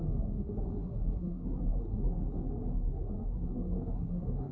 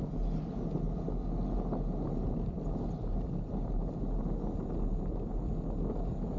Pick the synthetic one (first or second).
first